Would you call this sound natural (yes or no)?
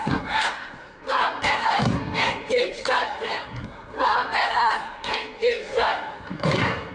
no